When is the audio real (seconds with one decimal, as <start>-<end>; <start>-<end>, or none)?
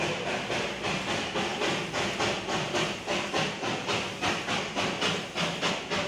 0.0-6.1